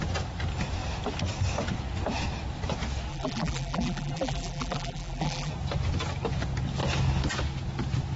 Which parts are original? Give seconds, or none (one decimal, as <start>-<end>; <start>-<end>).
0.0-3.1; 5.5-8.2